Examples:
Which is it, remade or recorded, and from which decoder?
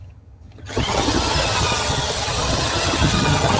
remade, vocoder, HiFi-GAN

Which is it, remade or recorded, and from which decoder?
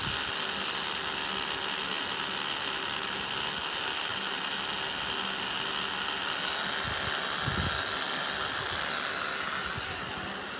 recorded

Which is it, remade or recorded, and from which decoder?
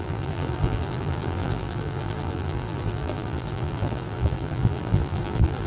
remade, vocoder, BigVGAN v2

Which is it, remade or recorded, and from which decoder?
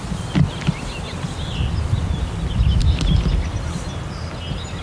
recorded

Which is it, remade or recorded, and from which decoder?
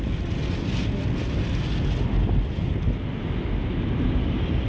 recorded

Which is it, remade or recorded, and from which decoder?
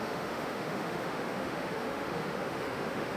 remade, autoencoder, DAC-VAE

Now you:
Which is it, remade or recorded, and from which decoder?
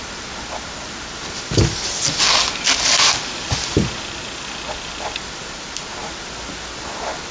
recorded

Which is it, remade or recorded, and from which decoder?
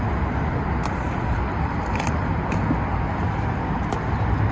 recorded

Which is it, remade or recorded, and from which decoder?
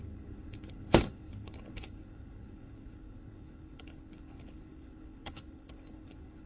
remade, codec, HILCodec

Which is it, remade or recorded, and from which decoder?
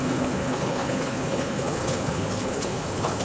remade, codec, HILCodec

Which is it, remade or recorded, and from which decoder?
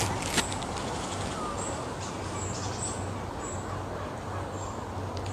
recorded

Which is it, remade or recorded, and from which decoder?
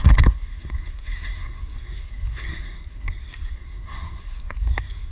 remade, codec, SNAC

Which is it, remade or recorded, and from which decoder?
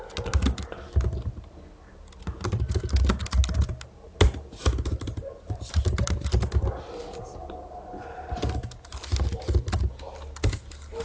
recorded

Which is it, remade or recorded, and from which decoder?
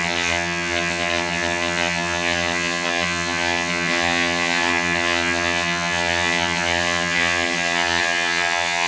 remade, vocoder, HiFi-GAN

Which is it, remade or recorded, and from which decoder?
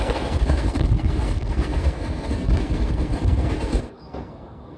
remade, codec, SNAC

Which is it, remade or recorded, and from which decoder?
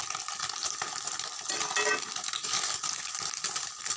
recorded